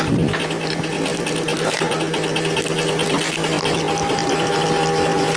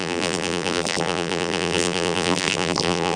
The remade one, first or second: second